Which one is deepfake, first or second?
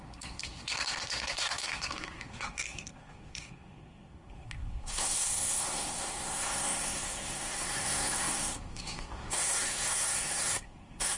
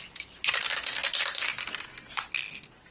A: first